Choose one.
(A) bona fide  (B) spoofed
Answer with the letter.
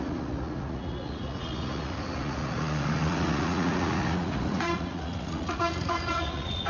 B